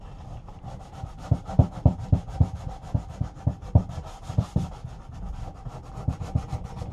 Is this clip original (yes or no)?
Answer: yes